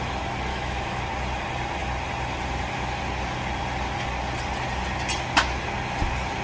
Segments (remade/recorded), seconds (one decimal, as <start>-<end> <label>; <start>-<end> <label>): 0.0-0.5 recorded; 0.5-1.0 remade; 1.0-6.4 recorded